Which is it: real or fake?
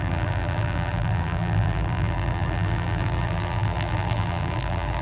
fake